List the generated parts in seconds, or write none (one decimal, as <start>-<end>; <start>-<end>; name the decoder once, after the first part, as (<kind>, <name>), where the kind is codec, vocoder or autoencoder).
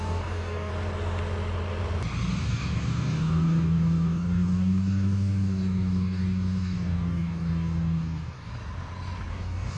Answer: 0.0-0.7 (codec, DAC); 2.4-8.5; 9.3-9.8